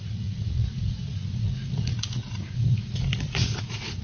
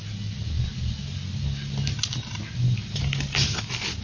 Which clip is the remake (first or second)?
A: first